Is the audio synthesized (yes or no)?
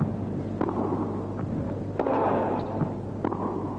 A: no